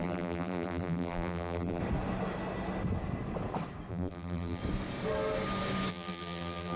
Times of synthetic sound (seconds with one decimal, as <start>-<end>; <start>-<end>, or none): 0.0-1.8; 3.9-4.6; 5.9-6.8